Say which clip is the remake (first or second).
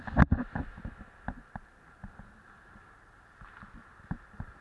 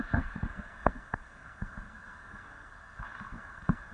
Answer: second